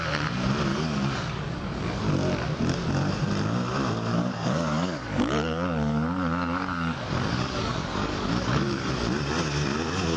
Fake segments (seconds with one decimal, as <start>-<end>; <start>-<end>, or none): 0.7-2.0; 4.1-8.9